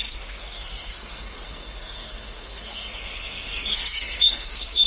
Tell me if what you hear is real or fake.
fake